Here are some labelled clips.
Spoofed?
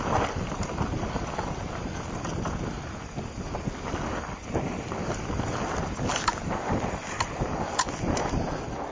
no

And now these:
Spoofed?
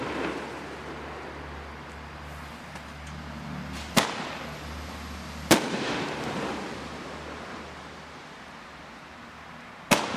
no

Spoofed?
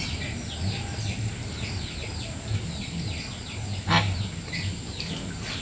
no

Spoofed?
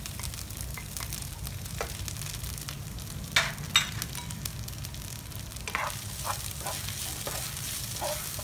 no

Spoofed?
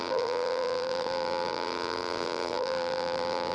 yes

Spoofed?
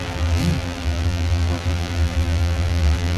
yes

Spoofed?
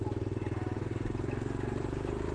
no